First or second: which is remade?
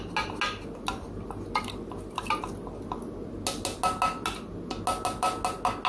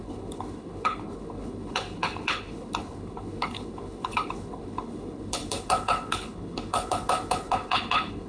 second